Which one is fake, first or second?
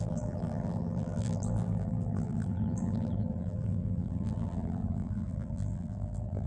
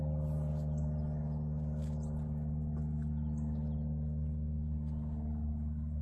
first